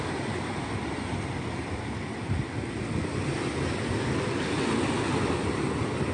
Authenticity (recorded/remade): recorded